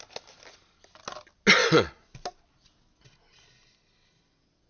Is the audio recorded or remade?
recorded